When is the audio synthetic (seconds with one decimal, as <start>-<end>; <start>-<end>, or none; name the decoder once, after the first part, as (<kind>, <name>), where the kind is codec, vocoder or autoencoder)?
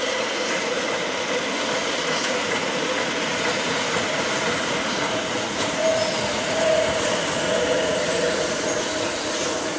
0.0-1.0 (vocoder, Vocos); 2.0-9.8